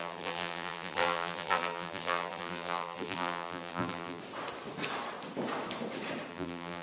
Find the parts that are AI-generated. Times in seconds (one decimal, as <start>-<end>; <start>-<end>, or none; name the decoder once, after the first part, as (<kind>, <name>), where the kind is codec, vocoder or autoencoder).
0.0-4.2 (vocoder, BigVGAN v2); 6.3-6.8